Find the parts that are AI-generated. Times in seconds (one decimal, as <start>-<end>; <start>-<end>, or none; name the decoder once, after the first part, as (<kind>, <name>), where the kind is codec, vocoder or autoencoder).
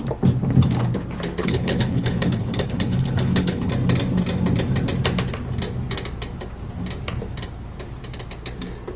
1.4-3.7 (codec, HILCodec)